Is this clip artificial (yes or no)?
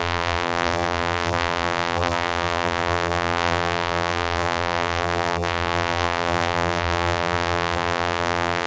yes